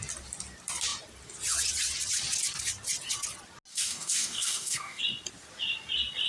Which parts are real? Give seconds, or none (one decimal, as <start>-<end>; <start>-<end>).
0.0-3.7; 5.0-6.3